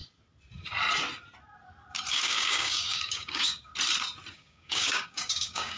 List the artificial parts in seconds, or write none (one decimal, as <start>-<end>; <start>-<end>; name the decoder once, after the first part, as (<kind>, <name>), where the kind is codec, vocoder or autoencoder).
2.1-3.7 (codec, DAC); 4.3-5.8